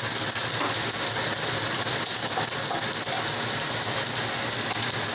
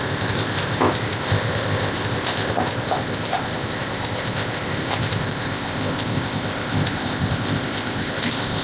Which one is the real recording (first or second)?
first